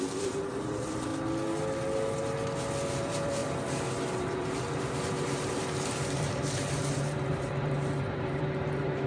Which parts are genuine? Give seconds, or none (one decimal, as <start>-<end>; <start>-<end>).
1.1-2.9